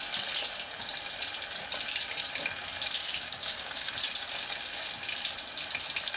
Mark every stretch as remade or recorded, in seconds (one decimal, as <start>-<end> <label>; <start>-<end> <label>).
0.0-3.0 recorded; 3.0-3.9 remade; 3.9-6.2 recorded